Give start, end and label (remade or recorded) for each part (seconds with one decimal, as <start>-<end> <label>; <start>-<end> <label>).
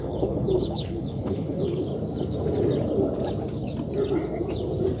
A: 0.0-1.9 remade; 1.9-5.0 recorded